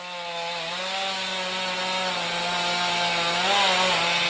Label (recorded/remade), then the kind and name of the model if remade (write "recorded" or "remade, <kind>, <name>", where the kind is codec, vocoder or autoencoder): recorded